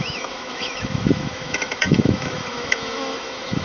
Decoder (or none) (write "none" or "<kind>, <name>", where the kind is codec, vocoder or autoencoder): autoencoder, DAC-VAE